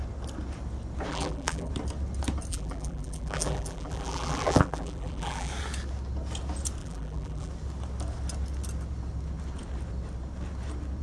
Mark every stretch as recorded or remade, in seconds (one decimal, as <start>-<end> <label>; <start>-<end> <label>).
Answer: 0.0-1.1 recorded; 1.1-1.7 remade; 1.7-2.5 recorded; 2.5-5.5 remade; 5.5-6.8 recorded; 6.8-7.5 remade; 7.5-11.0 recorded